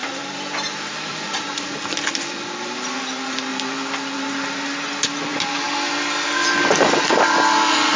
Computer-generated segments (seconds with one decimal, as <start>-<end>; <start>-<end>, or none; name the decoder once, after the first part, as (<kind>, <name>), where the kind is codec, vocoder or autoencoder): 0.0-3.0 (vocoder, BigVGAN v2); 3.5-4.3